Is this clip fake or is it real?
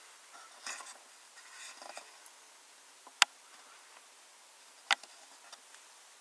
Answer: real